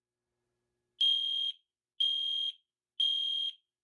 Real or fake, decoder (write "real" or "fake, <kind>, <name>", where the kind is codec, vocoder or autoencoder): real